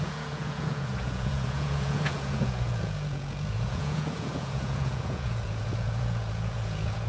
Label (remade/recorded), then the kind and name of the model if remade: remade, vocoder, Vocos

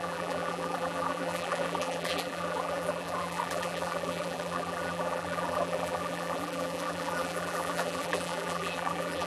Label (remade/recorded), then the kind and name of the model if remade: remade, vocoder, BigVGAN v2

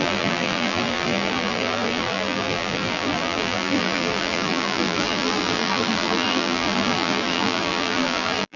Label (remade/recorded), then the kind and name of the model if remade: remade, vocoder, BigVGAN v2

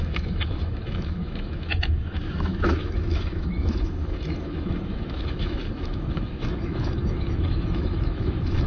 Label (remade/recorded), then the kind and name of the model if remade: remade, autoencoder, DAC-VAE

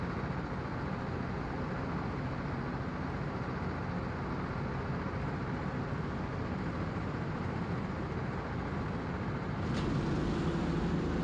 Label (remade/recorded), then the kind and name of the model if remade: recorded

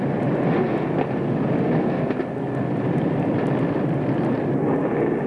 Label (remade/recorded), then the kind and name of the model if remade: recorded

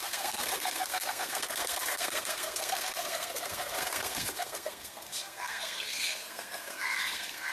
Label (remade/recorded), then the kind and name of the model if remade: remade, codec, SNAC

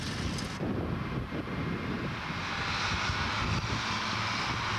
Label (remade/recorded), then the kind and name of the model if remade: recorded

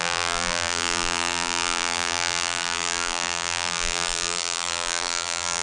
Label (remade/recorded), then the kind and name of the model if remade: remade, vocoder, BigVGAN v2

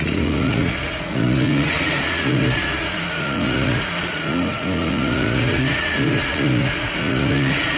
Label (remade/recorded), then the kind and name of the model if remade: remade, vocoder, Vocos